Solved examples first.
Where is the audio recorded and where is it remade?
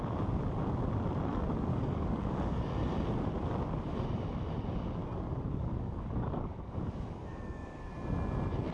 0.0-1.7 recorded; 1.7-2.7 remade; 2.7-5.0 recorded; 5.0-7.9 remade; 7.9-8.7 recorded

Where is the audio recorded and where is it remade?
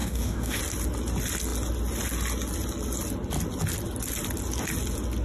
0.0-0.6 remade; 0.6-5.2 recorded